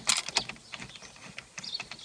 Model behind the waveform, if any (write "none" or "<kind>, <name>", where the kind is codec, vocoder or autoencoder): none